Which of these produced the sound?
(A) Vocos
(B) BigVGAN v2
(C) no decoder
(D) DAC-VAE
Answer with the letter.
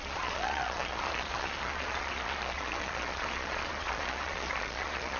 A